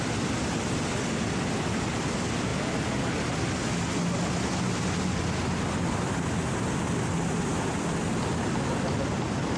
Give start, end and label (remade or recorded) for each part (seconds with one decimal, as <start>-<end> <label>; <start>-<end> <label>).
0.0-9.6 recorded